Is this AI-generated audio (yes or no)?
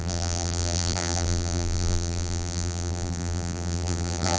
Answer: yes